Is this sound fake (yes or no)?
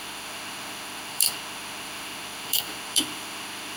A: yes